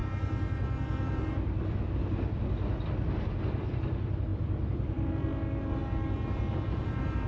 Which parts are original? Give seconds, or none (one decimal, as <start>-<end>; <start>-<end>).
0.0-4.3; 5.1-7.3